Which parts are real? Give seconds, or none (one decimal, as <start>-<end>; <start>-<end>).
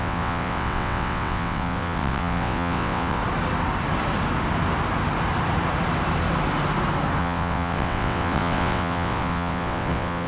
3.2-7.2